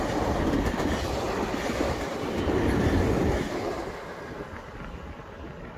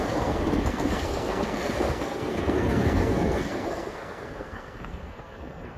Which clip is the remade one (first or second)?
second